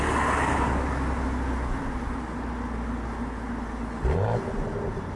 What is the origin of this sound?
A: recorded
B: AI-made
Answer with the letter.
A